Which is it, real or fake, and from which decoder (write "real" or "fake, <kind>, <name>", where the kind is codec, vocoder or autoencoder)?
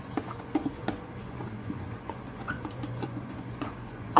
fake, vocoder, Vocos